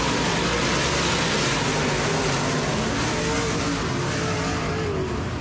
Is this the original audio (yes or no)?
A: yes